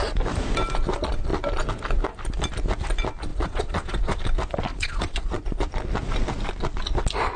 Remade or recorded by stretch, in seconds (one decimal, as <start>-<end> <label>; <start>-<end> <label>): 0.0-3.3 recorded; 3.3-4.2 remade; 4.2-4.7 recorded; 4.7-5.4 remade; 5.4-7.4 recorded

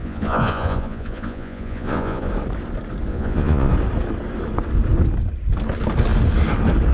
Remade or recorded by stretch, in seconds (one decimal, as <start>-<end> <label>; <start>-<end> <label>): 0.0-2.3 remade; 2.3-3.1 recorded; 3.1-3.7 remade; 3.7-6.9 recorded